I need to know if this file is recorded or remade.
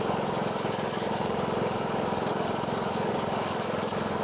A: remade